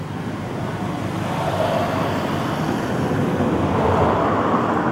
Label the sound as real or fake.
real